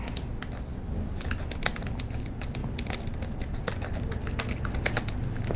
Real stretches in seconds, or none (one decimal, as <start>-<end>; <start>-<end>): 0.0-5.6